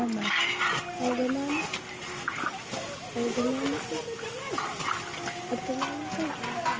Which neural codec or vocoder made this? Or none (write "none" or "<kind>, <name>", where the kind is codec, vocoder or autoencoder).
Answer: none